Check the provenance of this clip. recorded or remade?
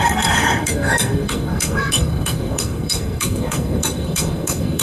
remade